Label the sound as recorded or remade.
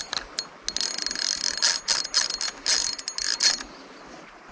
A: recorded